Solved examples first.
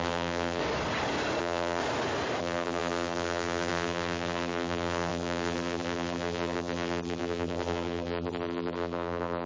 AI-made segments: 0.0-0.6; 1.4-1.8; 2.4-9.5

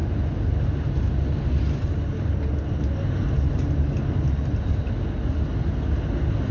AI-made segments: none

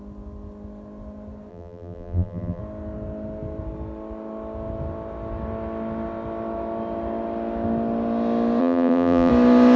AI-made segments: 1.5-2.6; 8.6-9.3

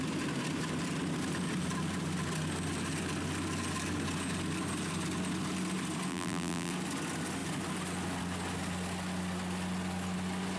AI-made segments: 6.1-6.7

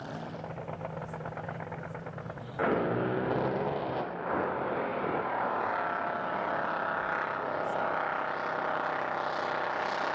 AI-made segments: 4.9-5.7

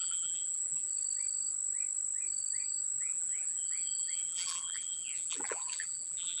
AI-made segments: 0.0-0.9; 3.0-6.4

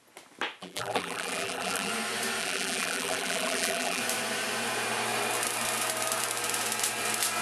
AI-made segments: 0.6-1.9; 2.4-4.0

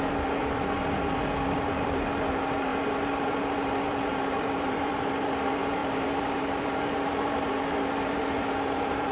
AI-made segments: 0.0-9.1